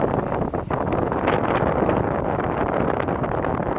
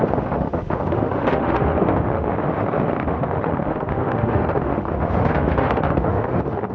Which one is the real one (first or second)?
first